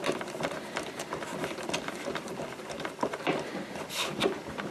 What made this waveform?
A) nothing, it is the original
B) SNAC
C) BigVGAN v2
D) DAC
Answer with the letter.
C